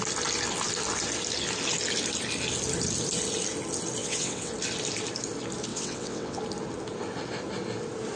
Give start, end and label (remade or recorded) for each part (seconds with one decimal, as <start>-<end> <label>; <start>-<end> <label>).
0.0-4.0 recorded; 4.0-4.5 remade; 4.5-5.7 recorded; 5.7-6.4 remade; 6.4-8.2 recorded